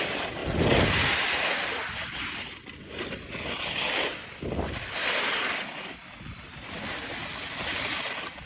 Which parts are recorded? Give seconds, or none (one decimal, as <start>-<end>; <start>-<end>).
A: 0.4-1.7; 4.1-8.0